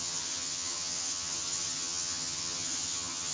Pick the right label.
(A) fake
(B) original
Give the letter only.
A